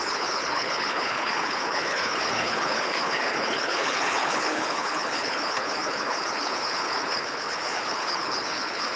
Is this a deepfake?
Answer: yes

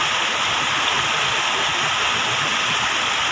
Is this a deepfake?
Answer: no